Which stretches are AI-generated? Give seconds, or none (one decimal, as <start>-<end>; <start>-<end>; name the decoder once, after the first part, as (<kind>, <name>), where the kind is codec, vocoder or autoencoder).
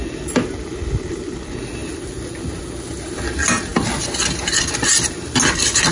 none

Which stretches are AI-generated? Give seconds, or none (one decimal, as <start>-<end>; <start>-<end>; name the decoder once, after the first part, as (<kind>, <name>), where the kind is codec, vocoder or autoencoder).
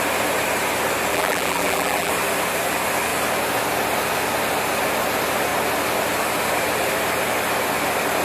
1.1-2.1 (vocoder, BigVGAN v2)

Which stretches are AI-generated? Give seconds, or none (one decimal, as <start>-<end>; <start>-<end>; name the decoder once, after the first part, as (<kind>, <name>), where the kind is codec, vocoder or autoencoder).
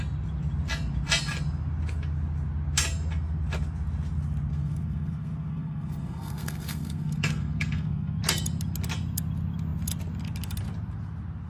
4.5-8.2 (codec, SNAC)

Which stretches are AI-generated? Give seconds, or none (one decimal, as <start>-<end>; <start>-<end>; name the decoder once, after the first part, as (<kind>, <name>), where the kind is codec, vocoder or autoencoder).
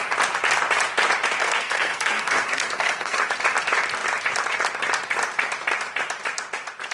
1.4-3.3 (codec, SNAC)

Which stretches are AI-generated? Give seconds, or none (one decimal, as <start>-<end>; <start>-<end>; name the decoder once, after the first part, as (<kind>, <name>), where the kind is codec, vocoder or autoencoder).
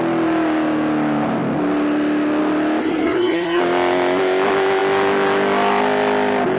2.8-3.6 (codec, SNAC)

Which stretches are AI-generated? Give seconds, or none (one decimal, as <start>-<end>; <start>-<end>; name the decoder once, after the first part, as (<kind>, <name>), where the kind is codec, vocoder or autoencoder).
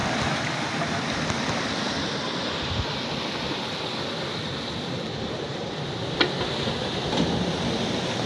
none